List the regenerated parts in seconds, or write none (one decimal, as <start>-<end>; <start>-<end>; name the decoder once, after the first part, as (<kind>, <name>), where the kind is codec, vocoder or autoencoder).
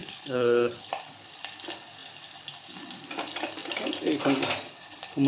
0.0-0.9 (codec, HILCodec)